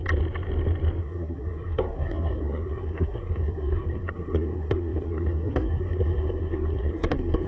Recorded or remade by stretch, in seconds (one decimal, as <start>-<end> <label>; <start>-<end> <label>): 0.0-1.0 recorded; 1.0-7.5 remade